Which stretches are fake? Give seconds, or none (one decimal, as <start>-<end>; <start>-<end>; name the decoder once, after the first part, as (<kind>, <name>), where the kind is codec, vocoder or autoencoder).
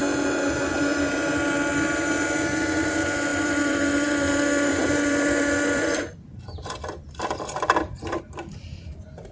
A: 3.3-8.2 (vocoder, BigVGAN v2)